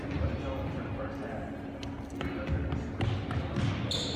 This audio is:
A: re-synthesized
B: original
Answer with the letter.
B